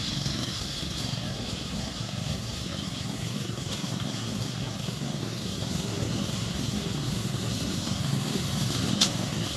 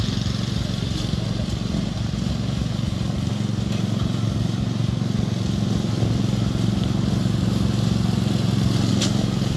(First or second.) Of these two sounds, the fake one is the first